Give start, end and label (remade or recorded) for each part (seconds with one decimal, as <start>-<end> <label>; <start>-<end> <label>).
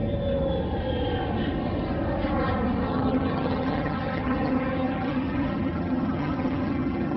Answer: 0.0-2.9 recorded; 2.9-7.2 remade